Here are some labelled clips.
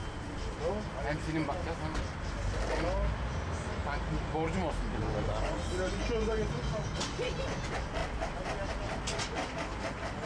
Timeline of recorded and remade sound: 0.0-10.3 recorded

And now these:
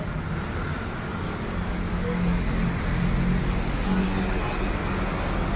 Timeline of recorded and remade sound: 0.0-1.1 recorded; 1.1-2.8 remade; 2.8-3.4 recorded; 3.4-4.4 remade; 4.4-5.6 recorded

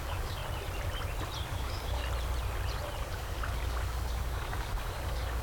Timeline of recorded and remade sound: 0.0-0.4 remade; 0.4-1.5 recorded; 1.5-2.0 remade; 2.0-3.0 recorded; 3.0-5.4 remade